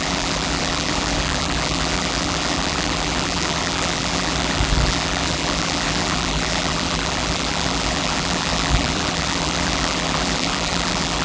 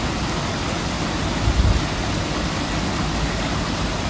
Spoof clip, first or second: first